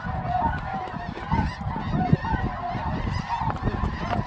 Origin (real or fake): real